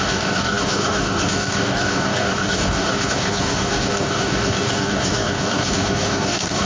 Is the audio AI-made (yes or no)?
yes